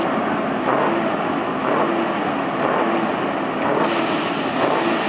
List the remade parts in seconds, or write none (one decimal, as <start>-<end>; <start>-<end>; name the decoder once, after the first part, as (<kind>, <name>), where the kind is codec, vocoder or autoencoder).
none